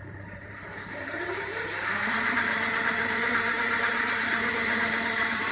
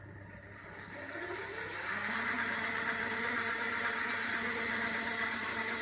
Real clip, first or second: second